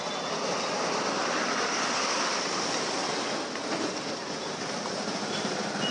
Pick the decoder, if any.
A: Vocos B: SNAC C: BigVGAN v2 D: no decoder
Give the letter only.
C